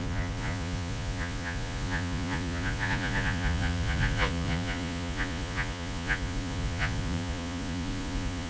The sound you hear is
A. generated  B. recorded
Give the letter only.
A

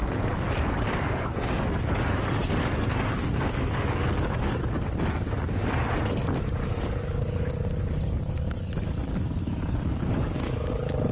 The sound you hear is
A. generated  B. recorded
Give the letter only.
A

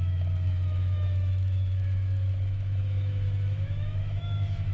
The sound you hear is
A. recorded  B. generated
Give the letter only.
B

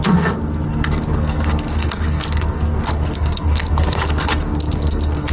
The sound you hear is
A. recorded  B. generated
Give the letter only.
B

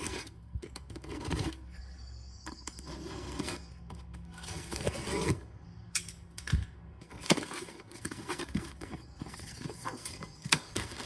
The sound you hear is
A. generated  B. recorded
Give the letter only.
A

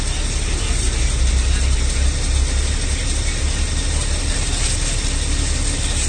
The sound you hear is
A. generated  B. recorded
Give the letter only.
B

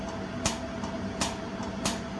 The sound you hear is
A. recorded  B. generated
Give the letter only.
A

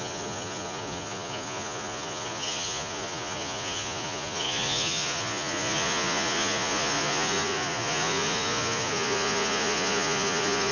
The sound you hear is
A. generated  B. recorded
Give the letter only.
A